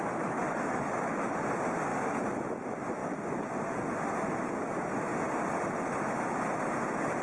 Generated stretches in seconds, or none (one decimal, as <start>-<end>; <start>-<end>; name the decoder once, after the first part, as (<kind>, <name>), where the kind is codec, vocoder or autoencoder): 0.4-1.3 (autoencoder, DAC-VAE)